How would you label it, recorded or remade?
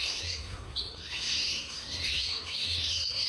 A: remade